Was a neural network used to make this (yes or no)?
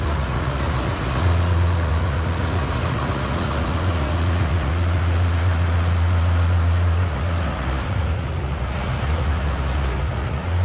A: yes